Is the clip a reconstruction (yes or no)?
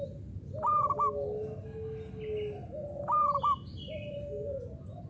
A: no